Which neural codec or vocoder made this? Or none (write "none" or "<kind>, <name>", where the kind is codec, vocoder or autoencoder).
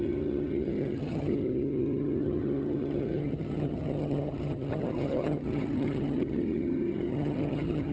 vocoder, HiFi-GAN